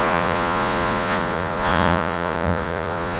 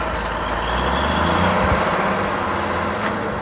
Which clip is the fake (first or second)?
first